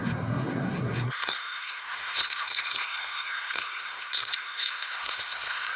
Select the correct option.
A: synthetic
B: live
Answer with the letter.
A